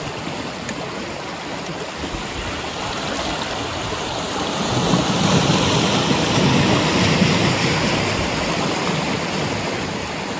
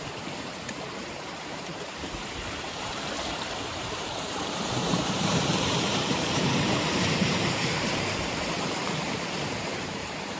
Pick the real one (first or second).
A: first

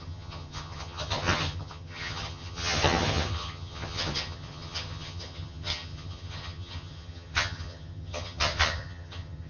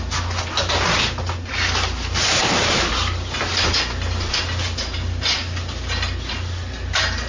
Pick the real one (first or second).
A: second